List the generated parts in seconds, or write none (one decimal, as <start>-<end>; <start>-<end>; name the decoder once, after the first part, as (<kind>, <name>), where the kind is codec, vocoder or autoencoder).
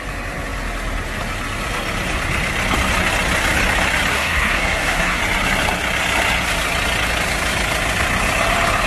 4.1-5.2 (codec, SNAC)